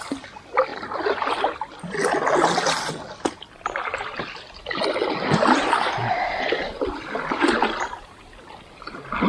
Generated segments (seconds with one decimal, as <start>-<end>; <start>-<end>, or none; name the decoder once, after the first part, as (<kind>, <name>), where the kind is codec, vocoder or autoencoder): 6.0-6.7 (vocoder, BigVGAN v2)